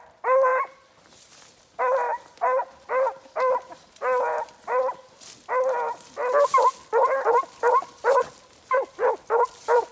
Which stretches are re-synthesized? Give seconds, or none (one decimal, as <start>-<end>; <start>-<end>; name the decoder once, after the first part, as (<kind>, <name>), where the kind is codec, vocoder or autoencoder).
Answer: none